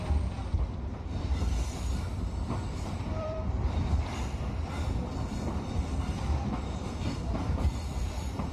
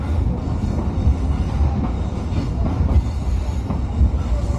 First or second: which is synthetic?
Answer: first